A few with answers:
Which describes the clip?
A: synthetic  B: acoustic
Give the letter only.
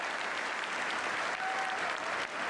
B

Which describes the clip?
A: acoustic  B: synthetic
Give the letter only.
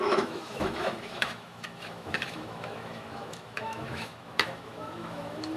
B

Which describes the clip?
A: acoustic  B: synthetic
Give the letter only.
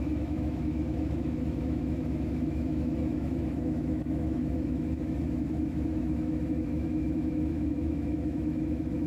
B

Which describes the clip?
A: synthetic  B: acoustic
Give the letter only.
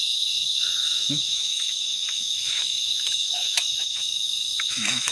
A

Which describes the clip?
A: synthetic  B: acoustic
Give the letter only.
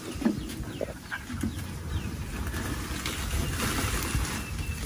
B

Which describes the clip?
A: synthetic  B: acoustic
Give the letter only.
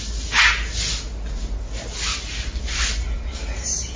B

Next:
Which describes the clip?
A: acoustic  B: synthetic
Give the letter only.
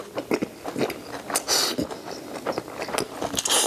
A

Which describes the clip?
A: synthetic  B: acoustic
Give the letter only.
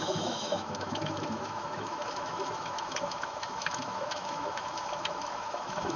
A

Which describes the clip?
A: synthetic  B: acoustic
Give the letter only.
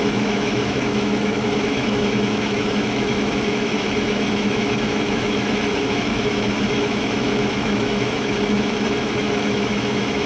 A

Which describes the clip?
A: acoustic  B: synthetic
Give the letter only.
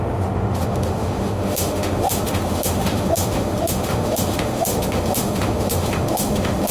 B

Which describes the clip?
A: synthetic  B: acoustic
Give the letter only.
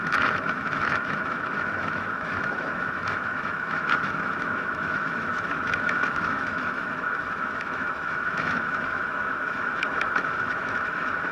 A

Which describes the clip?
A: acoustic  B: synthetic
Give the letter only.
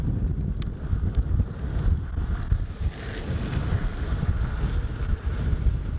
A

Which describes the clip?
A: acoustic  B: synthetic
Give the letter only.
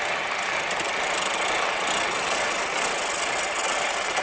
A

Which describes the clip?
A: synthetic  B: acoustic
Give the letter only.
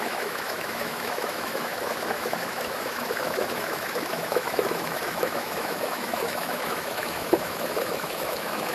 A